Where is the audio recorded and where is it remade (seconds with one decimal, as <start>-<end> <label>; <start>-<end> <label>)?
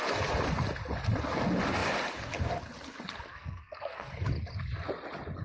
0.0-3.3 recorded; 3.3-4.1 remade; 4.1-5.4 recorded